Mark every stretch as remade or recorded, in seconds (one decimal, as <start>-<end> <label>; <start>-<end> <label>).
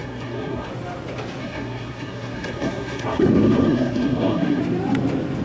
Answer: 0.0-0.7 remade; 0.7-1.4 recorded; 1.4-4.6 remade; 4.6-5.4 recorded